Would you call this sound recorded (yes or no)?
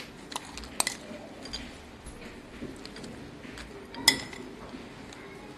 yes